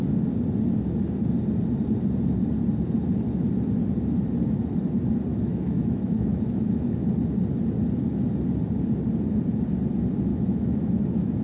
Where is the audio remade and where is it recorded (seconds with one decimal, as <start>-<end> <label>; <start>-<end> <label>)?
0.0-5.3 recorded; 5.3-7.1 remade; 7.1-10.3 recorded; 10.3-11.4 remade